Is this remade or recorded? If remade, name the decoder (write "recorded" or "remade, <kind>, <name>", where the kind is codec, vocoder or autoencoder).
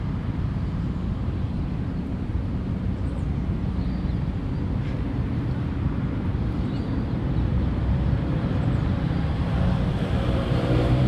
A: remade, vocoder, BigVGAN v2